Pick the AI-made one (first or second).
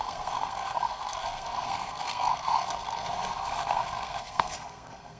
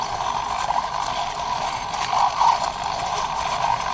first